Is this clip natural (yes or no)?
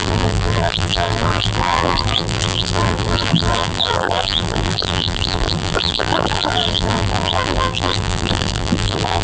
no